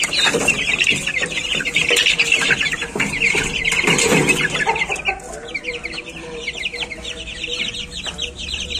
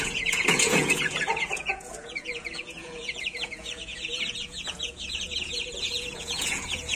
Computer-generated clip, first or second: second